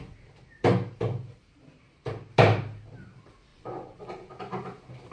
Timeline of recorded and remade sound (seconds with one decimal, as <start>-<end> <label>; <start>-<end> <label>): 0.0-3.5 recorded; 3.5-4.3 remade; 4.3-5.1 recorded